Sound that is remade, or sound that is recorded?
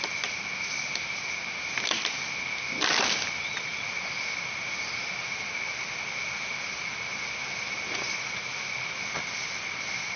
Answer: recorded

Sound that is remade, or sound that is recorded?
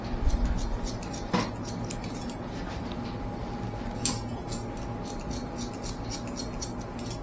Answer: recorded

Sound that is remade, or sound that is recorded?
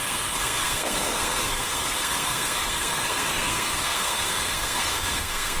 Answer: remade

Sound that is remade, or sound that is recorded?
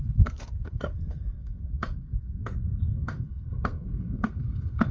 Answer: remade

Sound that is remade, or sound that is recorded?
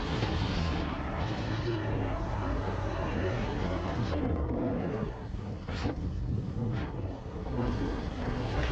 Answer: remade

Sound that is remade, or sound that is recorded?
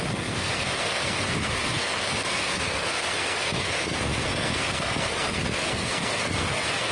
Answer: remade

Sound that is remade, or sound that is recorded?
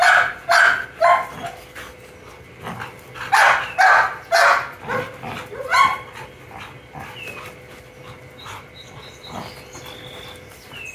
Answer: recorded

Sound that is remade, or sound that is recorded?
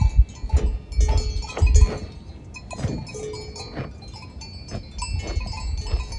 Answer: recorded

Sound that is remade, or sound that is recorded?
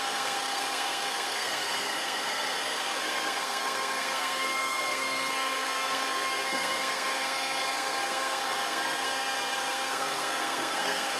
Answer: remade